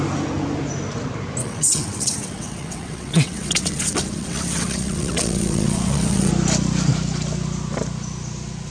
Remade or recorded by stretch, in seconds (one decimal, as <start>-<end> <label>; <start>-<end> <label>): 0.0-1.4 recorded; 1.4-6.3 remade; 6.3-8.7 recorded